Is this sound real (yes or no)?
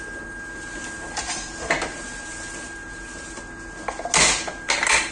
yes